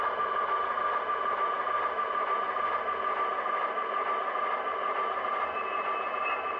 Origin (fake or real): real